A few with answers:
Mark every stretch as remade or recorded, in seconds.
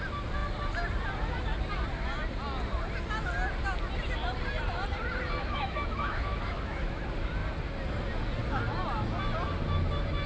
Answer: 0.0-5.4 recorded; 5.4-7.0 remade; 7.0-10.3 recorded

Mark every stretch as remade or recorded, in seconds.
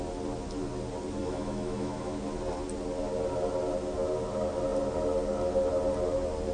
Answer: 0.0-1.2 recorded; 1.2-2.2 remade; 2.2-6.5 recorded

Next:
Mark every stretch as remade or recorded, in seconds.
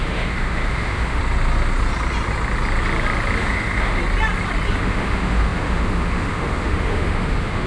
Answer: 0.0-1.2 remade; 1.2-3.4 recorded; 3.4-4.0 remade; 4.0-4.8 recorded; 4.8-7.7 remade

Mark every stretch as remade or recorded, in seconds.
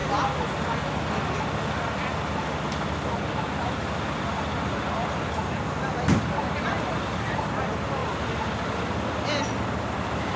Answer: 0.0-10.4 recorded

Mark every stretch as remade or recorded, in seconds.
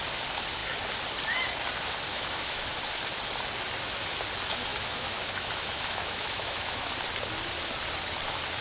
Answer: 0.0-2.1 recorded; 2.1-2.7 remade; 2.7-4.7 recorded; 4.7-6.9 remade; 6.9-8.6 recorded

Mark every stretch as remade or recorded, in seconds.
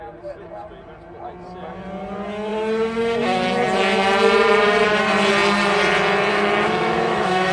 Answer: 0.0-6.3 recorded; 6.3-7.5 remade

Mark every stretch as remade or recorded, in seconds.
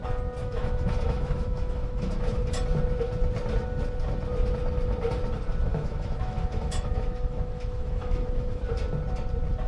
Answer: 0.0-0.4 recorded; 0.4-2.4 remade; 2.4-5.7 recorded; 5.7-8.6 remade; 8.6-9.7 recorded